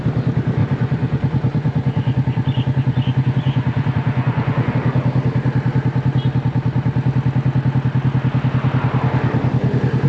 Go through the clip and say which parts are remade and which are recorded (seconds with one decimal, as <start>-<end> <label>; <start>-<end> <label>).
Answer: 0.0-0.6 recorded; 0.6-4.7 remade; 4.7-10.1 recorded